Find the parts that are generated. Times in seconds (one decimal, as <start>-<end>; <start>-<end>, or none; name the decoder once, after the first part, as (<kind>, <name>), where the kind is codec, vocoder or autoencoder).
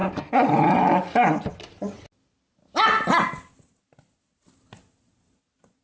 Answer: none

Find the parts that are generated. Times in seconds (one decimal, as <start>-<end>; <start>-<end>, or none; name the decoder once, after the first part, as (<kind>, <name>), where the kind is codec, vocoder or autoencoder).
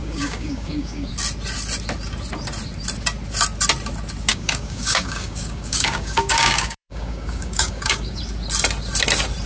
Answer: 0.0-1.1 (codec, DAC); 4.3-8.2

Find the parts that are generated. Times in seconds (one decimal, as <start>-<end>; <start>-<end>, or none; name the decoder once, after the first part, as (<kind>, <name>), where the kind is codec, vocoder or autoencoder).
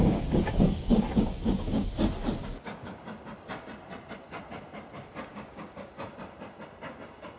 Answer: 0.0-1.9 (codec, DAC); 2.4-3.0; 5.3-5.9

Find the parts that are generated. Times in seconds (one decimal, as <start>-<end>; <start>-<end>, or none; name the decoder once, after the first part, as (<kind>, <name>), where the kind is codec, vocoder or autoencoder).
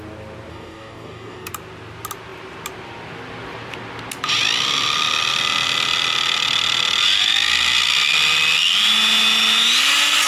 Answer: 0.5-1.5 (codec, DAC)